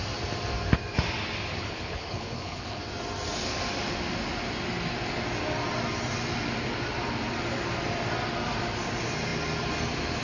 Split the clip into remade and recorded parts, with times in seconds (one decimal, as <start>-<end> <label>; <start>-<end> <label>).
0.0-1.5 recorded; 1.5-2.8 remade; 2.8-10.2 recorded